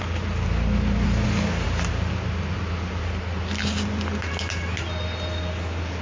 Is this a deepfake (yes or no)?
no